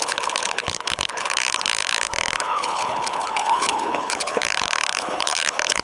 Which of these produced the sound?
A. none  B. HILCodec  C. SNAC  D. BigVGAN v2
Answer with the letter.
B